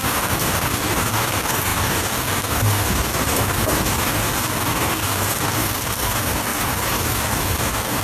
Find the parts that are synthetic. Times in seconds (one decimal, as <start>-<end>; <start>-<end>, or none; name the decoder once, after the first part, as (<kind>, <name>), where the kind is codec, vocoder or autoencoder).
0.0-8.0 (codec, DAC)